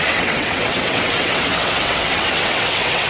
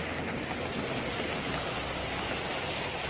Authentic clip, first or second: second